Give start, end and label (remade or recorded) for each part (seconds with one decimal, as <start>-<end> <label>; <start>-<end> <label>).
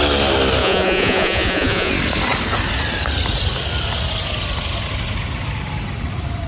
0.0-0.6 recorded; 0.6-1.9 remade; 1.9-6.5 recorded